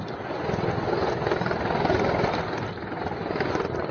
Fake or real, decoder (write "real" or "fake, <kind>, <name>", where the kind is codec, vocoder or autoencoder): real